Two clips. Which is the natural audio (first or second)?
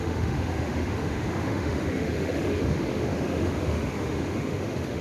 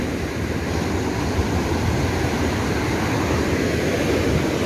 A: second